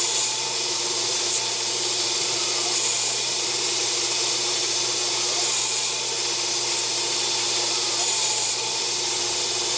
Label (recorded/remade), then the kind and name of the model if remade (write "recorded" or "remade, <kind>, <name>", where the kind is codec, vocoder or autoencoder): remade, vocoder, BigVGAN v2